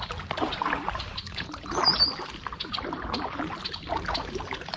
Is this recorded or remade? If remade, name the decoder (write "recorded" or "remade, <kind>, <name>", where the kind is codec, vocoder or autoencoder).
recorded